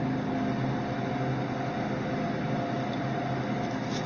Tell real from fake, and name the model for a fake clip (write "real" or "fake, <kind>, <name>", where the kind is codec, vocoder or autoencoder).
real